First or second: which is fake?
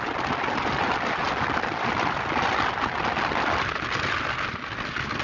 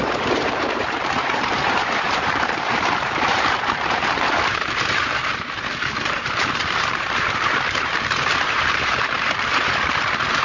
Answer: second